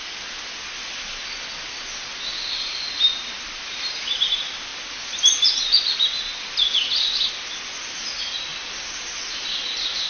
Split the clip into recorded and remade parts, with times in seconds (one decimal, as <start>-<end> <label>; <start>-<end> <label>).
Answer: 0.0-10.1 recorded